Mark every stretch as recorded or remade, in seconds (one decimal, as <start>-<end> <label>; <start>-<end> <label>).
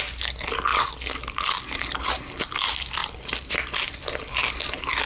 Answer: 0.0-5.1 recorded